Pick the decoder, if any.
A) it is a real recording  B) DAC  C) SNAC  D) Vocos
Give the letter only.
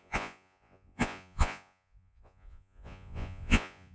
D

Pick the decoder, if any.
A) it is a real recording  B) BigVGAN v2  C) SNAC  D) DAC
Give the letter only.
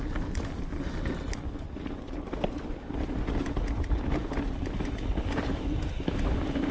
A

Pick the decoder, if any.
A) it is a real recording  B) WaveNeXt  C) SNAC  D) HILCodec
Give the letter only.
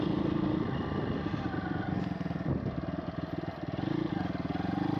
A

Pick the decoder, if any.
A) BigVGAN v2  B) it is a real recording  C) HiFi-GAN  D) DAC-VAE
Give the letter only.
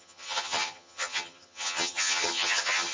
C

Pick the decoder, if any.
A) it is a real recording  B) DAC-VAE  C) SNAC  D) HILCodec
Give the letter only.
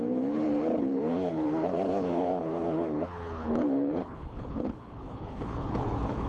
D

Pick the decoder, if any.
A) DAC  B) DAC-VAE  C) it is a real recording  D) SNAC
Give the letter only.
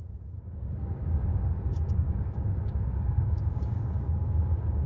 A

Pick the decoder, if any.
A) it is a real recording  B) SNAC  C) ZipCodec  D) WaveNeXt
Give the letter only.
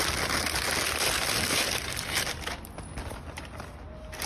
A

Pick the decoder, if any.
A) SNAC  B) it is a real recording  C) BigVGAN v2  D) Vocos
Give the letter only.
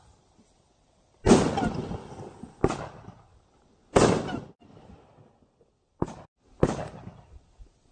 B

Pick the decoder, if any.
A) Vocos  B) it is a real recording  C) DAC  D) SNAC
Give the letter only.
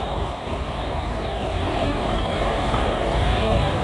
C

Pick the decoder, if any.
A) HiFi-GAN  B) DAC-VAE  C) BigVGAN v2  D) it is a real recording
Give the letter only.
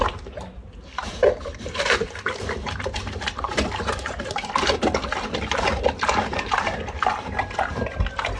D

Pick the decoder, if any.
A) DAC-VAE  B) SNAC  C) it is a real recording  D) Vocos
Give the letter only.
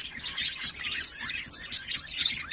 D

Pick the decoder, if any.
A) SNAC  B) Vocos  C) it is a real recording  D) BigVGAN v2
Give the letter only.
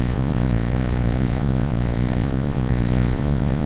B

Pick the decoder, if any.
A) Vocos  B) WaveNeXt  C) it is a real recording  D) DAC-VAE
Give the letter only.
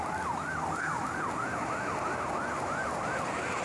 C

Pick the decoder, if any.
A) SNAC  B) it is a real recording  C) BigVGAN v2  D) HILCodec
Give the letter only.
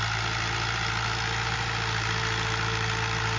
B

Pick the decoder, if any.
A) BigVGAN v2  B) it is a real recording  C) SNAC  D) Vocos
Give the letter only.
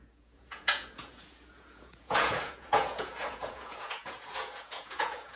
D